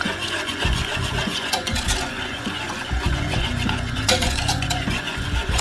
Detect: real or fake fake